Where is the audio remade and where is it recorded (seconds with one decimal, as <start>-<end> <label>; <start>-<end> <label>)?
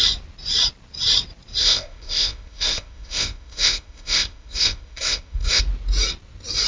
0.0-1.6 recorded; 1.6-5.6 remade; 5.6-6.7 recorded